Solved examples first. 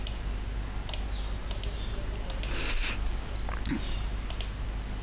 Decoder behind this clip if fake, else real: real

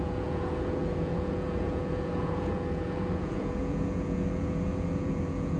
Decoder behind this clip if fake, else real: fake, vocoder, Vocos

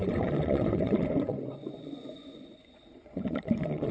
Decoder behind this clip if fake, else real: fake, vocoder, Vocos